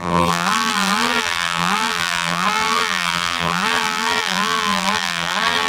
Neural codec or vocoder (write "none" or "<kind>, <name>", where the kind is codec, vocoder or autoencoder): vocoder, BigVGAN v2